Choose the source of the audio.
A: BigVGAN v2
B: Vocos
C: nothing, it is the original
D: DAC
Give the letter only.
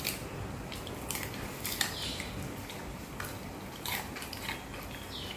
C